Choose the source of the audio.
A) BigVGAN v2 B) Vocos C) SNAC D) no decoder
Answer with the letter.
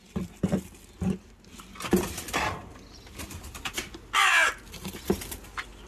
D